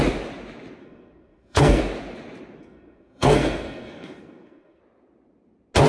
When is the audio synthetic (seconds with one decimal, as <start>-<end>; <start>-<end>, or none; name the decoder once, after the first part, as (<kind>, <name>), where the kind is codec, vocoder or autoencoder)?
0.8-1.8 (codec, SNAC); 2.6-4.8